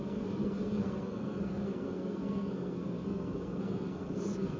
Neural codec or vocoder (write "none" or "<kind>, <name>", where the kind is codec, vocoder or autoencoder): codec, SNAC